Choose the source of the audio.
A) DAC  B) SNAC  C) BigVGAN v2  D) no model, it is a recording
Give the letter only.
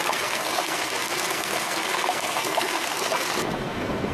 B